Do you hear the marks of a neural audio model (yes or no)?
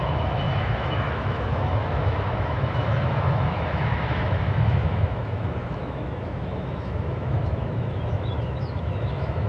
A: yes